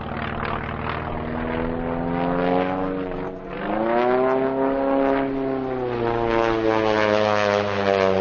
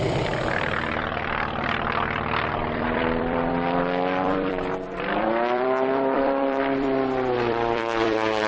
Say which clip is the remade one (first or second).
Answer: second